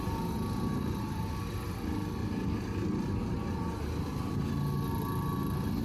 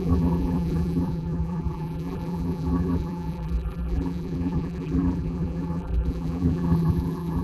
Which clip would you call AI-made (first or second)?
second